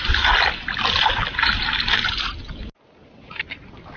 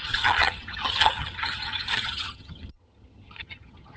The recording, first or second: first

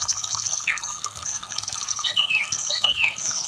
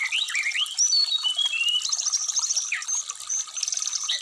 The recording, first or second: second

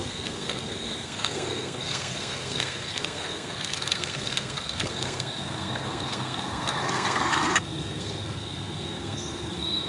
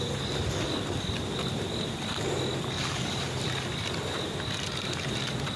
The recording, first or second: second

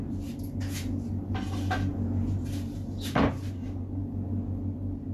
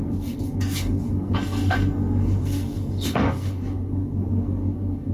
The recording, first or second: first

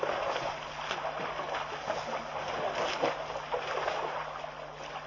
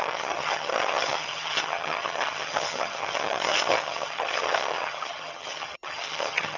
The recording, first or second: first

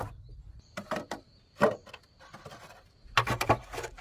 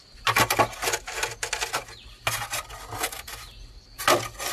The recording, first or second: second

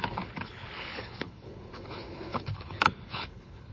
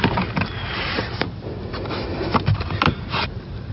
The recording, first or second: second